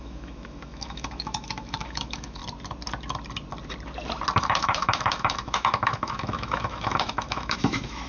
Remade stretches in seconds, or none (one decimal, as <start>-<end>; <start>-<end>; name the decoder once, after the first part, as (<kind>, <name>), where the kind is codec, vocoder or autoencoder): 0.0-2.4 (autoencoder, DAC-VAE); 4.4-8.1